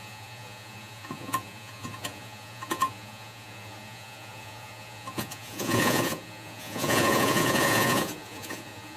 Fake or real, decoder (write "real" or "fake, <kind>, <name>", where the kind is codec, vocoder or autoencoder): fake, vocoder, Vocos